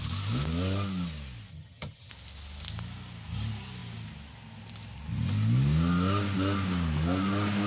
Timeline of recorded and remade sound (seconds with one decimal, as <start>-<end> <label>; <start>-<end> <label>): 0.0-1.5 recorded; 1.5-2.1 remade; 2.1-7.7 recorded